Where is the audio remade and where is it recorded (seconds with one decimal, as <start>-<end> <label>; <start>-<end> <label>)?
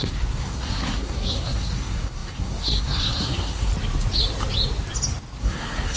0.0-3.7 remade; 3.7-5.4 recorded; 5.4-6.0 remade